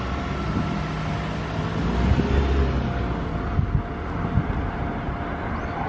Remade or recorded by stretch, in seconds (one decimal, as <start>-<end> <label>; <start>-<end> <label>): 0.0-5.9 recorded